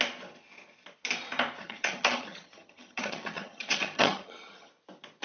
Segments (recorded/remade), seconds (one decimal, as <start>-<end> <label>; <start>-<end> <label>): 0.0-1.6 recorded; 1.6-4.7 remade; 4.7-5.2 recorded